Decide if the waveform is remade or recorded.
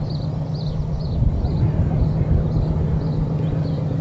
recorded